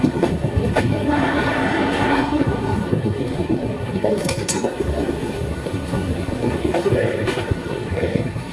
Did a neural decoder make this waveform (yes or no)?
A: yes